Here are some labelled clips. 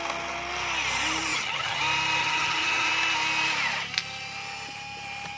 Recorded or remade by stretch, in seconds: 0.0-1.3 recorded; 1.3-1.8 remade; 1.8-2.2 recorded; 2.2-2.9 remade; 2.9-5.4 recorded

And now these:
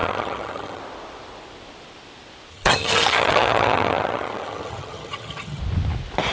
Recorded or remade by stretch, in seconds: 0.0-0.8 remade; 0.8-2.5 recorded; 2.5-5.6 remade; 5.6-6.3 recorded

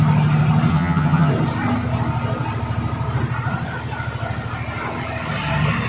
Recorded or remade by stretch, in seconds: 0.0-0.7 recorded; 0.7-1.3 remade; 1.3-5.9 recorded

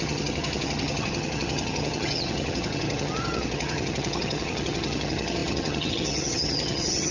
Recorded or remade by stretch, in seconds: 0.0-7.1 remade